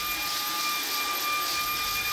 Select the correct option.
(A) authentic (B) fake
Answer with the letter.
A